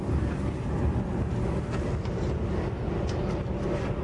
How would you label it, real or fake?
real